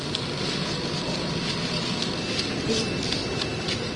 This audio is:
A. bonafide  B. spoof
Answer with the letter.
A